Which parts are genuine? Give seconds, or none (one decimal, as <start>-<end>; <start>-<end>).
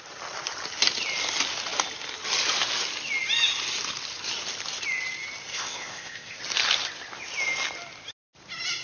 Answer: 0.0-5.5; 6.4-8.8